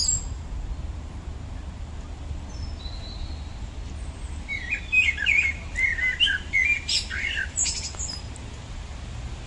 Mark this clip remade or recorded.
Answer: recorded